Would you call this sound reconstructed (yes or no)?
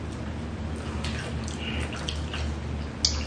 no